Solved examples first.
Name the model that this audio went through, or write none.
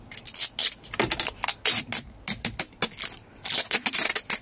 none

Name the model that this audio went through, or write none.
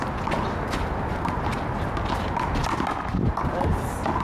none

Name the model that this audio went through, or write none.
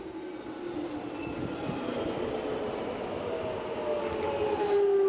none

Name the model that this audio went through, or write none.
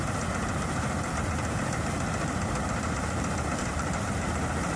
vocoder, BigVGAN v2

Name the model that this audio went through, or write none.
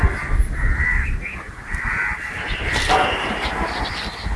none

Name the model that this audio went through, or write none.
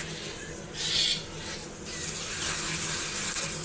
none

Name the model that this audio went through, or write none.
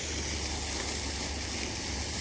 none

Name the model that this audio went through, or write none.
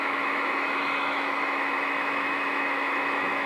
autoencoder, DAC-VAE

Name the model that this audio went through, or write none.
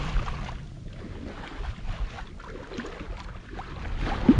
none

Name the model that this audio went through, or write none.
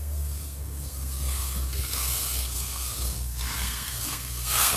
codec, SNAC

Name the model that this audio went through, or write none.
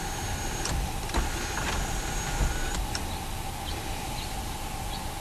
none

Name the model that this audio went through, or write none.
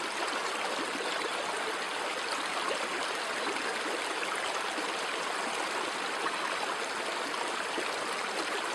none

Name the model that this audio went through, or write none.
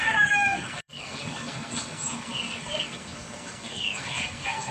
codec, SNAC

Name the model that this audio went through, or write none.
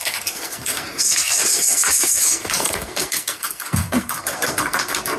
codec, SNAC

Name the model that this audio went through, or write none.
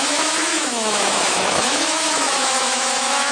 autoencoder, DAC-VAE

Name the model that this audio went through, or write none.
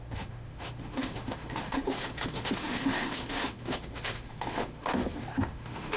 autoencoder, DAC-VAE